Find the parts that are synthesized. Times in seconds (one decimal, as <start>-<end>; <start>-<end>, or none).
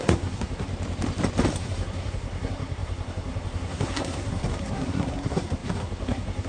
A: 0.0-0.7; 1.6-6.5